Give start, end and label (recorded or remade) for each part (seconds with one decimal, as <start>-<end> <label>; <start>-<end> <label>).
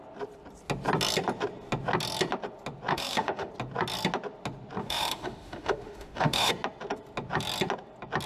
0.0-2.9 recorded; 2.9-3.5 remade; 3.5-4.8 recorded; 4.8-6.5 remade; 6.5-8.3 recorded